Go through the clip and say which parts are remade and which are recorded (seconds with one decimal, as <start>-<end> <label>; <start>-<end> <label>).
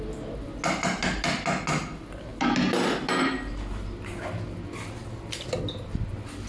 0.0-6.5 recorded